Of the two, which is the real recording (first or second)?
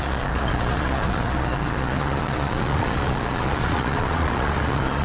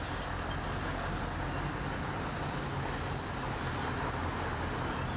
second